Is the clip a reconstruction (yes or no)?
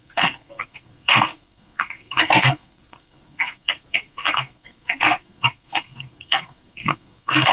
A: yes